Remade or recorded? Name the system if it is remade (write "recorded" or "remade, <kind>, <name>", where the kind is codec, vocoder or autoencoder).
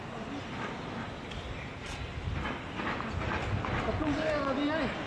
recorded